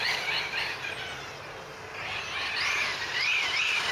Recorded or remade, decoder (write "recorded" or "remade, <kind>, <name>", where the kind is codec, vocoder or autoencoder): recorded